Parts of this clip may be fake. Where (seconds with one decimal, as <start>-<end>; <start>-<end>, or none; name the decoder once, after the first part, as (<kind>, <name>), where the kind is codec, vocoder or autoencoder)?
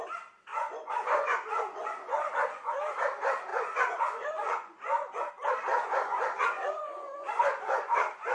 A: 0.5-2.7 (vocoder, Vocos); 3.5-5.3; 5.7-7.9